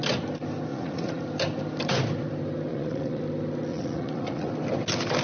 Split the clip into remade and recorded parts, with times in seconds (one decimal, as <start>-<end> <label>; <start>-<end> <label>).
0.0-0.7 recorded; 0.7-1.2 remade; 1.2-2.7 recorded; 2.7-3.2 remade; 3.2-3.7 recorded; 3.7-4.5 remade; 4.5-5.2 recorded